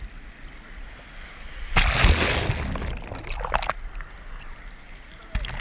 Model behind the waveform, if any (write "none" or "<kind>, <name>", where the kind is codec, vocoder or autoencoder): none